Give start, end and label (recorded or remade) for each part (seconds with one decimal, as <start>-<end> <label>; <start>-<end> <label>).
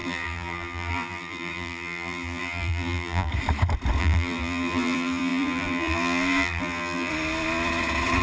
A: 0.0-3.3 remade; 3.3-4.0 recorded; 4.0-7.1 remade; 7.1-8.2 recorded